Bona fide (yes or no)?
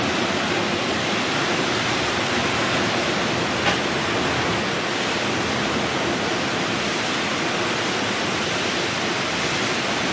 yes